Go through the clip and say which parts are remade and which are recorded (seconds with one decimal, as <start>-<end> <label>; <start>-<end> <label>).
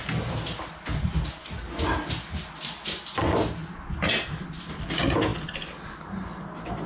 0.0-6.9 recorded